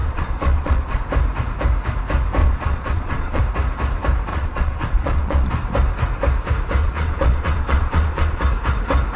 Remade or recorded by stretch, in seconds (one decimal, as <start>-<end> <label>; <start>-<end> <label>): 0.0-1.0 remade; 1.0-2.4 recorded; 2.4-3.4 remade; 3.4-4.3 recorded; 4.3-5.5 remade; 5.5-6.8 recorded; 6.8-8.4 remade; 8.4-9.2 recorded